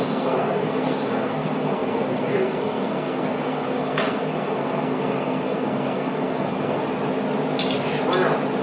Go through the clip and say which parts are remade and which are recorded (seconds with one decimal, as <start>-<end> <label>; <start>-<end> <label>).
0.0-6.8 remade; 6.8-8.6 recorded